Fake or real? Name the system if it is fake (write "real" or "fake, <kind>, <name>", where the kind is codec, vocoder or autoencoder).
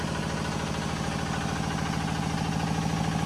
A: real